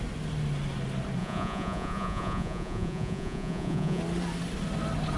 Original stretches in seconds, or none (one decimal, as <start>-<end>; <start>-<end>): 0.0-1.2; 4.0-5.2